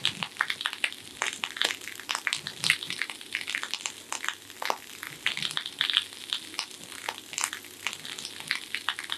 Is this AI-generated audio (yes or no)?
no